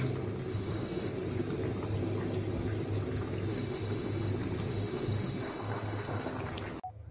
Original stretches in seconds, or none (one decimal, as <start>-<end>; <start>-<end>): 0.0-0.5; 1.1-3.5; 4.3-4.7; 6.3-7.1